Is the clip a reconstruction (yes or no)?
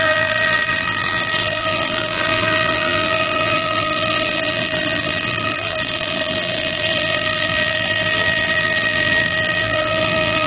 yes